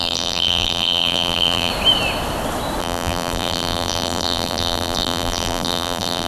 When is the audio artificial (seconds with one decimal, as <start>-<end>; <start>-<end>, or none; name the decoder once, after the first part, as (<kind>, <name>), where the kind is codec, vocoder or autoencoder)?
0.0-1.7 (vocoder, BigVGAN v2); 2.8-6.3